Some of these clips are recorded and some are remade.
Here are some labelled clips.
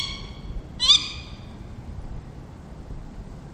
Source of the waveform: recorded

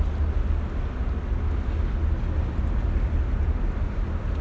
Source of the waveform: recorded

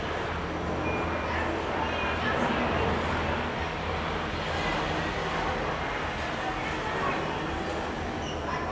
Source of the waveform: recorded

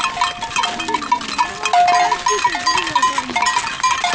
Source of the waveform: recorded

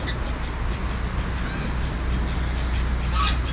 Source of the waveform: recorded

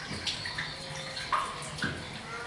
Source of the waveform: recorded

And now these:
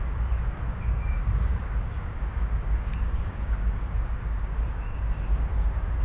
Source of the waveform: remade